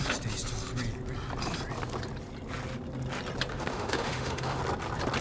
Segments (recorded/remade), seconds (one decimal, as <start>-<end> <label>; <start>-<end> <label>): 0.0-3.5 recorded; 3.5-4.6 remade; 4.6-5.2 recorded